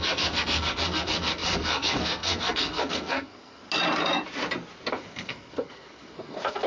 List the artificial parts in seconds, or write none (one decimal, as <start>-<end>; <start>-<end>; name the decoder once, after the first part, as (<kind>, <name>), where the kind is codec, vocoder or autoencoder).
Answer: 0.0-3.6 (codec, SNAC); 4.9-6.7